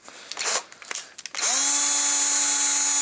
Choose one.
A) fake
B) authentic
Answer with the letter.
B